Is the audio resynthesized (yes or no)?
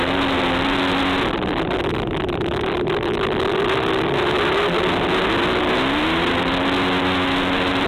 no